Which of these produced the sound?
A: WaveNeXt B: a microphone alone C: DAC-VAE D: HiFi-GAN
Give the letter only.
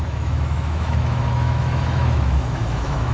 C